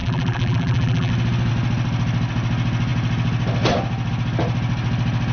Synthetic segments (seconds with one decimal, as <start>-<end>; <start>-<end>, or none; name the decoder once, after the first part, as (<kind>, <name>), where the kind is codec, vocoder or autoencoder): 0.0-1.1 (vocoder, BigVGAN v2)